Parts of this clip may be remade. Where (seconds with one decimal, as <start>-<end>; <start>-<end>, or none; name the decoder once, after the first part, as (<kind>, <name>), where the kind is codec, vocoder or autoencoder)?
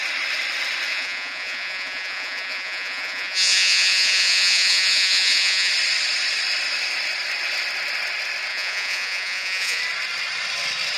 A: 0.9-5.7 (vocoder, Vocos); 8.5-9.8